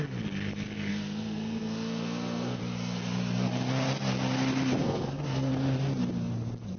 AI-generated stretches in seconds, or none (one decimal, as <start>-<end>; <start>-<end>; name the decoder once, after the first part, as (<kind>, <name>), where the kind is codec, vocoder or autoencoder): 0.9-2.6 (codec, SNAC); 4.8-5.5